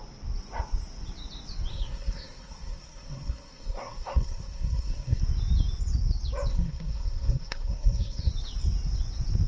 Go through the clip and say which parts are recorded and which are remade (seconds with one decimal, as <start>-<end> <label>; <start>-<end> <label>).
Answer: 0.0-1.7 recorded; 1.7-5.2 remade; 5.2-6.5 recorded; 6.5-8.3 remade; 8.3-9.5 recorded